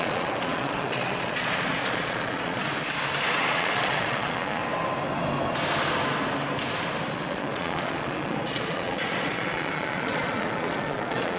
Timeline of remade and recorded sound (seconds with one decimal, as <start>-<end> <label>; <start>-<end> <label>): 0.0-2.6 remade; 2.6-3.3 recorded; 3.3-4.6 remade; 4.6-7.1 recorded; 7.1-11.4 remade